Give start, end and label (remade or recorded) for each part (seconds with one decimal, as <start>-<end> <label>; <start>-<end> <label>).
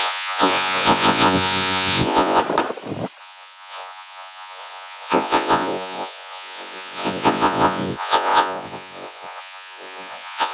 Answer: 0.0-2.4 remade; 2.4-3.2 recorded; 3.2-10.5 remade